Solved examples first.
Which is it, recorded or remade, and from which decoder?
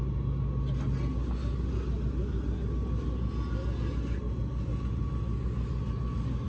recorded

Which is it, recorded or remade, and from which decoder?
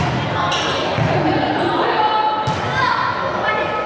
recorded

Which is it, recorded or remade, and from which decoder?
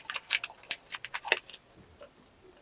remade, vocoder, BigVGAN v2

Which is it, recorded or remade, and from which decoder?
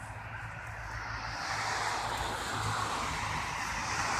recorded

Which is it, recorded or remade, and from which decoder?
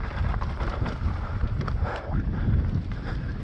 remade, vocoder, BigVGAN v2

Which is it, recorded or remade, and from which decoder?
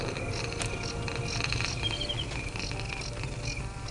recorded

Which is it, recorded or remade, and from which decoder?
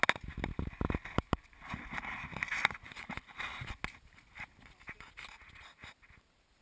recorded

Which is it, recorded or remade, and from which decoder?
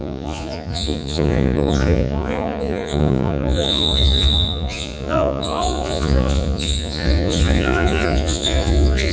remade, vocoder, Vocos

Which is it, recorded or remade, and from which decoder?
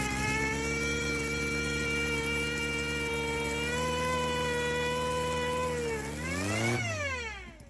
recorded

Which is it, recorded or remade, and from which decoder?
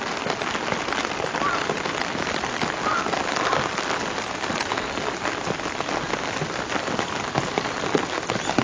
recorded